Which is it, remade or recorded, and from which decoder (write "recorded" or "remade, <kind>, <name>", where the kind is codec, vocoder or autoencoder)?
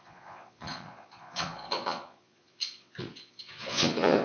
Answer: remade, vocoder, Vocos